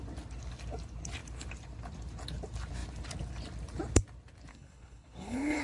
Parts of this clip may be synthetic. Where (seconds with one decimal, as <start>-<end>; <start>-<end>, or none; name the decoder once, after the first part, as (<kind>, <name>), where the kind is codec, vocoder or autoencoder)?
4.5-5.6 (codec, HILCodec)